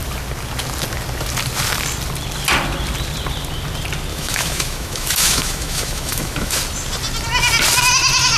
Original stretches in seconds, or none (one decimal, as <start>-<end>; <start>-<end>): 0.0-4.1; 6.6-8.4